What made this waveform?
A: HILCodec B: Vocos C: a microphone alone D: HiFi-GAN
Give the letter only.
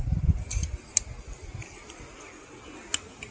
C